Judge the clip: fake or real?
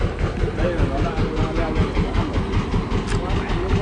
real